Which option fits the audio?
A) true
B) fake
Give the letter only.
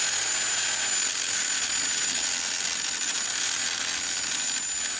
A